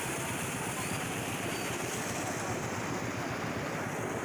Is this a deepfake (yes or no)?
no